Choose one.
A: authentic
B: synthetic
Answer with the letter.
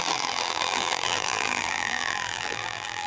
B